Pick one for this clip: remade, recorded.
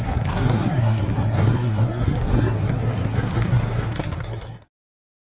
remade